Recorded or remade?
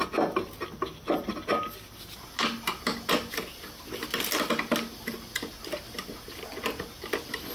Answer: recorded